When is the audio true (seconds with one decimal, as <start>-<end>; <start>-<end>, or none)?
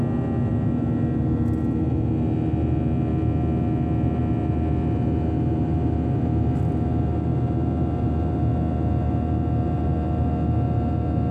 0.0-11.3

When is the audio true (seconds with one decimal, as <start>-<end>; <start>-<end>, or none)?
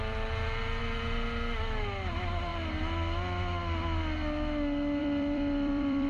0.0-5.0